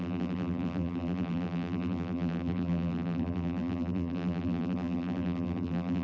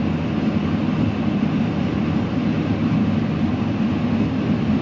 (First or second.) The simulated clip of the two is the first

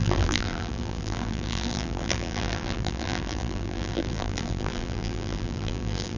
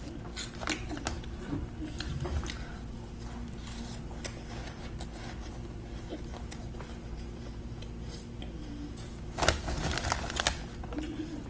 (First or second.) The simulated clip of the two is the first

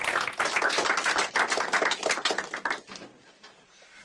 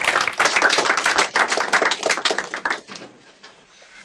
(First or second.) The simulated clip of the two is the second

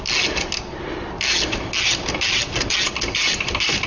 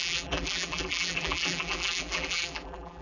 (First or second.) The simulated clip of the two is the second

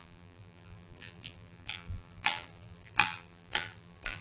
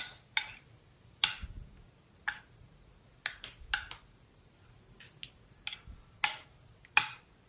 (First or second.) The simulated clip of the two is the first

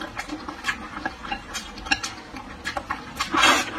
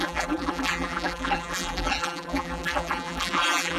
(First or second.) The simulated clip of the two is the second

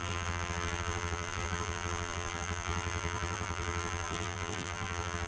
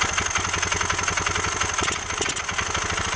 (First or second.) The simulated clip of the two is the first